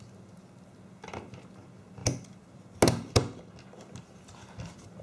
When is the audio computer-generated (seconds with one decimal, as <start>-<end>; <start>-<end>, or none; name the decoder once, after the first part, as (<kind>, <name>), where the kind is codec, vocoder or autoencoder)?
none